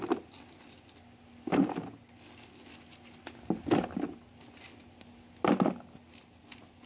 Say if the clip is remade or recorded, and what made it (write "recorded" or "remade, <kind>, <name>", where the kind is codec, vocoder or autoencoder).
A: recorded